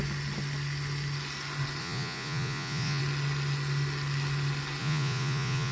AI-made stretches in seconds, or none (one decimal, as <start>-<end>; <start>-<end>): 1.8-3.0; 4.8-5.7